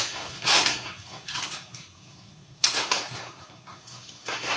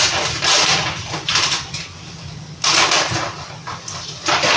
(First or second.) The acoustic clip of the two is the second